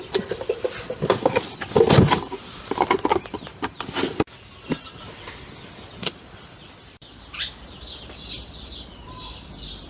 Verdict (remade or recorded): recorded